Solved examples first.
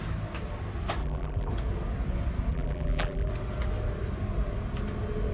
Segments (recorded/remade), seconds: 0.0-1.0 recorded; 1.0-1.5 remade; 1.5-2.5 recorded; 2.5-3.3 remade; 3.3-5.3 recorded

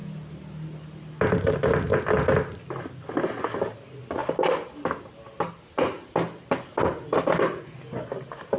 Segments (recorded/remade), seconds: 0.0-8.6 recorded

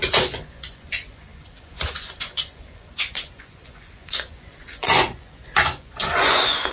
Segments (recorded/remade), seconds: 0.0-6.7 remade